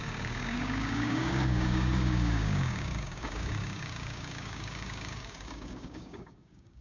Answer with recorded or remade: remade